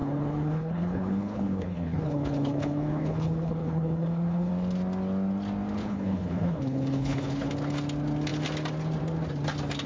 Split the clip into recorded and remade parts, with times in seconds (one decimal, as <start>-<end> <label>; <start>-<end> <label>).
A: 0.0-4.5 remade; 4.5-5.8 recorded; 5.8-7.5 remade; 7.5-9.9 recorded